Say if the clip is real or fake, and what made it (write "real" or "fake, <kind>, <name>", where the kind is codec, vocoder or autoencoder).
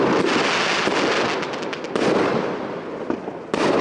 real